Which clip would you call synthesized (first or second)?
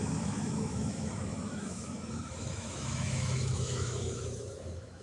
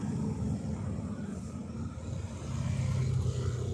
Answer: first